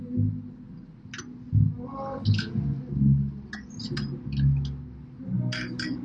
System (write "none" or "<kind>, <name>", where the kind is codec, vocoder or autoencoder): none